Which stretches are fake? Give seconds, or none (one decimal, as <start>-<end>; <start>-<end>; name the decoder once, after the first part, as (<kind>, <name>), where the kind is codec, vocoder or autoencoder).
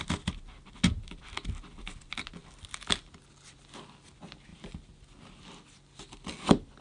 none